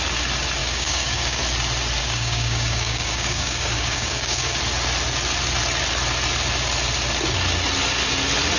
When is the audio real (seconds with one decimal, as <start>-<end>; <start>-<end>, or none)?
0.0-0.6; 1.4-2.0; 4.6-8.6